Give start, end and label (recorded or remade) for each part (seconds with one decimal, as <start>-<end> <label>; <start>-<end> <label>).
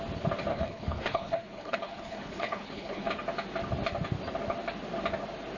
0.0-0.5 recorded; 0.5-3.1 remade; 3.1-5.6 recorded